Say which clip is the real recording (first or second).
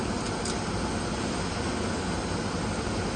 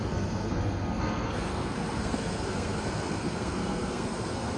first